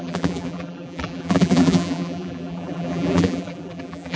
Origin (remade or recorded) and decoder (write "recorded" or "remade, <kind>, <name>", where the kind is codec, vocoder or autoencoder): remade, vocoder, BigVGAN v2